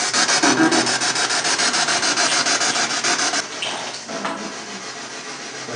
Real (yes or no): yes